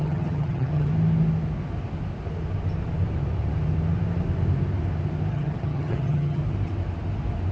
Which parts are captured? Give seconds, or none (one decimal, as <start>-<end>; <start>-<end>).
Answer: 0.9-5.3; 6.4-7.5